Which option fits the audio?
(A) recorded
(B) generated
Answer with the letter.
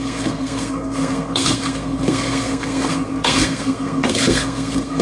B